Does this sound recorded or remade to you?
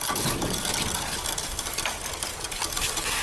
recorded